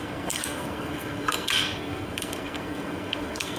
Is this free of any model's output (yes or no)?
no